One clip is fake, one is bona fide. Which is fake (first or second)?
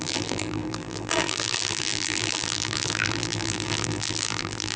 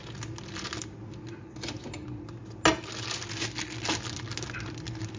first